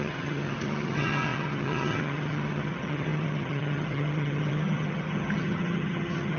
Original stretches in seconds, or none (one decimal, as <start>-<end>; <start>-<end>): none